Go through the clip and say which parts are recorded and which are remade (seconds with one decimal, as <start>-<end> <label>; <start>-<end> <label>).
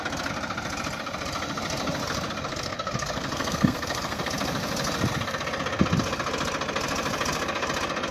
0.0-2.5 recorded; 2.5-4.3 remade; 4.3-8.1 recorded